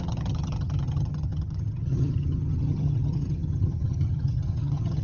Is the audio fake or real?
fake